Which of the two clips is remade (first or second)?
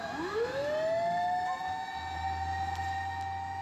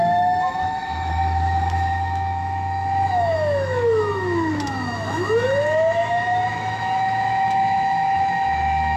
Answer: second